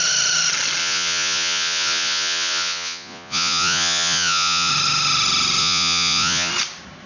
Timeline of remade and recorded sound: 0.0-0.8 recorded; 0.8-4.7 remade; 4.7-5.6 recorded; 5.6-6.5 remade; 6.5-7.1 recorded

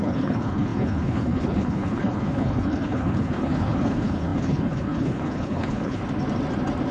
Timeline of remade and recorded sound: 0.0-6.0 remade; 6.0-6.9 recorded